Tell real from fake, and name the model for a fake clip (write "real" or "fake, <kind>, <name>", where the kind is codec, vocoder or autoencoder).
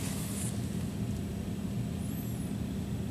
real